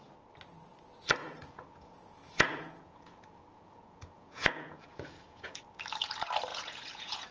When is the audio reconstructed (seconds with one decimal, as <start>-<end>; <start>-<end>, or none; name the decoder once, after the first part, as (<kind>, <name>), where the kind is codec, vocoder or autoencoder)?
1.2-5.6 (vocoder, Vocos); 6.5-7.3

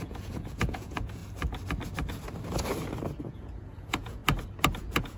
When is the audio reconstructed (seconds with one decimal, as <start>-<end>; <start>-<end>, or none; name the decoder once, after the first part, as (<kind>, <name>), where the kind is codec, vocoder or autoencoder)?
0.0-1.2 (vocoder, Vocos); 3.2-4.2; 4.8-5.2

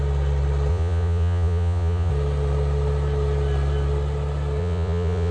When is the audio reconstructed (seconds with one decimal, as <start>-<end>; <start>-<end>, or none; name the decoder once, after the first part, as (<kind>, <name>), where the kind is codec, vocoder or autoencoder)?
0.7-2.1 (vocoder, Vocos); 4.6-5.3

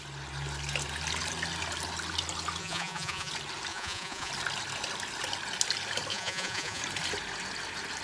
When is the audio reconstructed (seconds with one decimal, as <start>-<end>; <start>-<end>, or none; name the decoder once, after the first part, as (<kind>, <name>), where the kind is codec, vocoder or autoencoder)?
2.6-3.3 (vocoder, Vocos); 3.7-4.3; 6.1-6.8